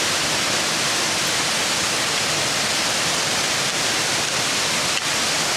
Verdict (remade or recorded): recorded